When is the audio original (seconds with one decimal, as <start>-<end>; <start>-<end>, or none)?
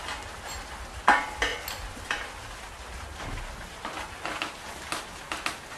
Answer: 0.0-5.8